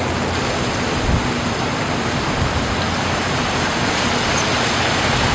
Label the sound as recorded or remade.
recorded